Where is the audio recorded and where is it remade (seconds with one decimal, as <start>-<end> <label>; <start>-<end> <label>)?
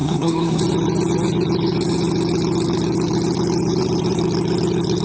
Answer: 0.0-0.6 remade; 0.6-5.0 recorded